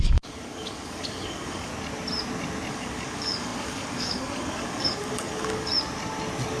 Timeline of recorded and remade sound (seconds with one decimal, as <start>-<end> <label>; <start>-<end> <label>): 0.0-1.7 remade; 1.7-2.7 recorded; 2.7-5.7 remade; 5.7-6.6 recorded